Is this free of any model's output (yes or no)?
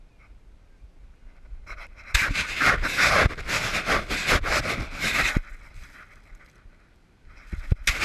yes